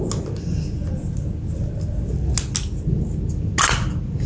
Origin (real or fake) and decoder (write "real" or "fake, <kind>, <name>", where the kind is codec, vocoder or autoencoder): real